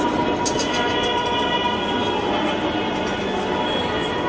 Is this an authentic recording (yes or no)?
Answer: yes